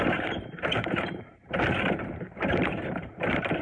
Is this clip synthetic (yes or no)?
yes